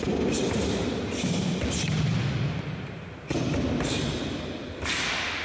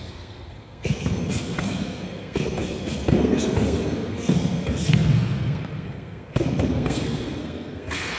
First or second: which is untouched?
first